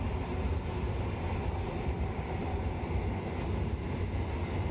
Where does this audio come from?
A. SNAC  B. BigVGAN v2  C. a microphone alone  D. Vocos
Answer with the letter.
C